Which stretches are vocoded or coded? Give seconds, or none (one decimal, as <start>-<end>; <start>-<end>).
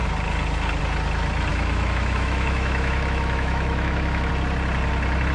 1.5-4.3